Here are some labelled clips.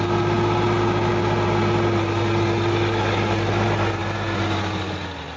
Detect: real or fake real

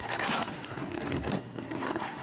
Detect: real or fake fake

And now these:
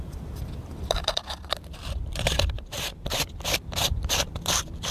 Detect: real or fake fake